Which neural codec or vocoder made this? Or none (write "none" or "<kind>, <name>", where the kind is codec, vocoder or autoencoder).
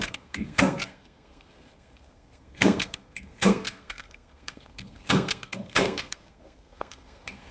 codec, SNAC